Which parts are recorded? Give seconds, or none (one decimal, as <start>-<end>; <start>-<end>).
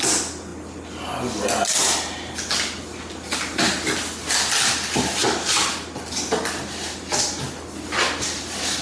0.0-8.8